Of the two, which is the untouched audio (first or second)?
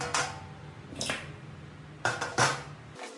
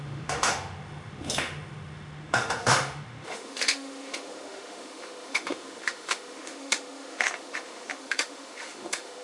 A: first